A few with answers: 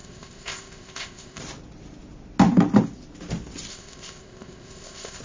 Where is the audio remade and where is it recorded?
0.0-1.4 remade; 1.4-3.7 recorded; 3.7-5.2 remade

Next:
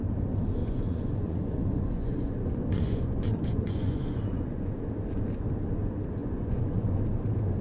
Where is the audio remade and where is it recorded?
0.0-0.6 recorded; 0.6-4.7 remade; 4.7-6.2 recorded; 6.2-7.0 remade; 7.0-7.6 recorded

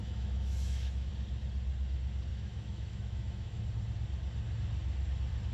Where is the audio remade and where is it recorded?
0.0-1.1 remade; 1.1-2.3 recorded; 2.3-3.6 remade; 3.6-5.5 recorded

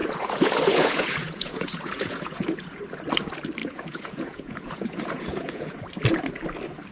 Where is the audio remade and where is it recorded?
0.0-2.8 remade; 2.8-3.6 recorded; 3.6-5.8 remade; 5.8-6.9 recorded